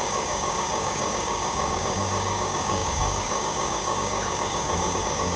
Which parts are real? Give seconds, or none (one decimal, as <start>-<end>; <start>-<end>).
none